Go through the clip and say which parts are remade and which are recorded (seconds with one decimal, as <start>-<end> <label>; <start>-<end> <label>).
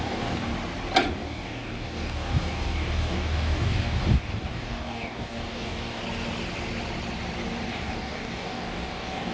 0.0-0.5 remade; 0.5-1.1 recorded; 1.1-6.0 remade; 6.0-7.7 recorded; 7.7-9.3 remade